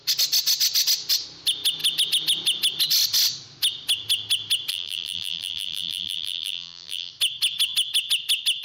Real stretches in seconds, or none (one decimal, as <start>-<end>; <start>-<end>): 0.0-4.7; 7.1-8.6